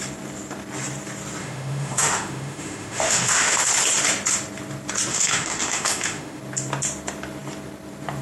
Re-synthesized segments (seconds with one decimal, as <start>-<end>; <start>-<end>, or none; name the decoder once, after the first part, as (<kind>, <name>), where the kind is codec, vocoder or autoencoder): 1.4-3.7 (autoencoder, DAC-VAE); 5.1-6.4